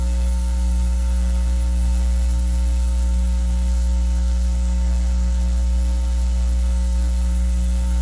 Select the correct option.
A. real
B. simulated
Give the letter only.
B